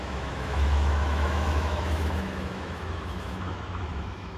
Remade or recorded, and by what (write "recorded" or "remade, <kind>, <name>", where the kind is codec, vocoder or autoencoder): remade, autoencoder, DAC-VAE